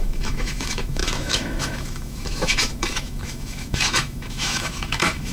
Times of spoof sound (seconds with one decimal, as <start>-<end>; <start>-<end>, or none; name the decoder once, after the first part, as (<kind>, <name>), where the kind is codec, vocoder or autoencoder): 0.0-5.3 (autoencoder, DAC-VAE)

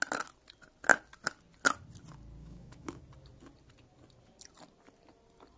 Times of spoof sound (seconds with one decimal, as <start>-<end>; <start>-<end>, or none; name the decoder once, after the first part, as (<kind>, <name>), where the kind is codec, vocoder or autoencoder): 2.4-3.0 (autoencoder, DAC-VAE)

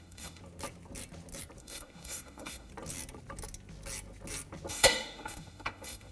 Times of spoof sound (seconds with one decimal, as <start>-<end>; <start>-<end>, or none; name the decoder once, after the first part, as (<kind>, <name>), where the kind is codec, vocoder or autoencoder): 0.0-0.4 (autoencoder, DAC-VAE); 1.6-2.7; 4.7-6.1

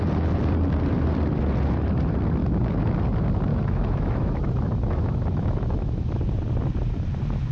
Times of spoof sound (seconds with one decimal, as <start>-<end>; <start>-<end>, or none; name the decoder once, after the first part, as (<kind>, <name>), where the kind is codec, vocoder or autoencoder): 3.5-6.2 (autoencoder, DAC-VAE)